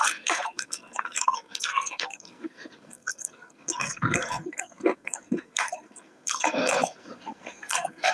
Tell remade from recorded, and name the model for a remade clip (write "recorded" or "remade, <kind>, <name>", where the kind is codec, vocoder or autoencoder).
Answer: remade, codec, SNAC